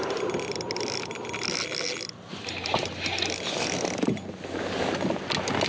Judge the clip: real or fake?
real